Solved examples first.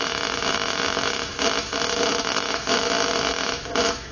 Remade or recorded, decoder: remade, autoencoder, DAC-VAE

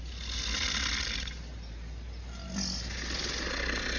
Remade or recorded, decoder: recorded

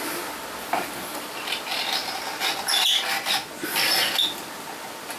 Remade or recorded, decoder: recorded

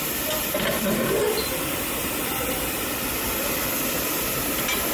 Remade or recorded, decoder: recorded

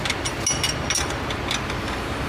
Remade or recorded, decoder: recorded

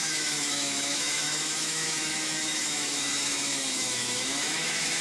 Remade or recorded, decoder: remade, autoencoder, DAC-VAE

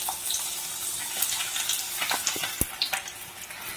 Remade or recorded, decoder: recorded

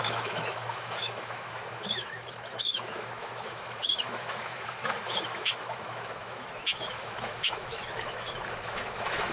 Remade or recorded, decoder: remade, autoencoder, DAC-VAE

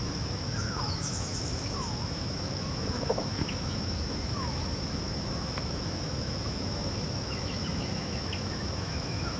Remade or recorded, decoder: remade, autoencoder, DAC-VAE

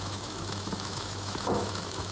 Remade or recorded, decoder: remade, autoencoder, DAC-VAE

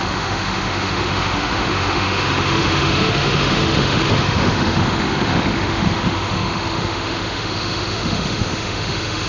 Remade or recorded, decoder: remade, autoencoder, DAC-VAE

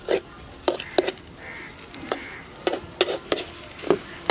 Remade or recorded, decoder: recorded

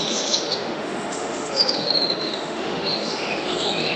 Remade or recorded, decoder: remade, autoencoder, DAC-VAE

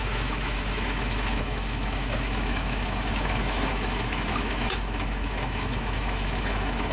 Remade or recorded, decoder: remade, autoencoder, DAC-VAE